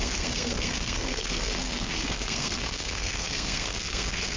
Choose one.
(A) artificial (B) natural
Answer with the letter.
A